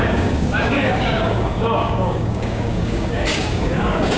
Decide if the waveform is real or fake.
fake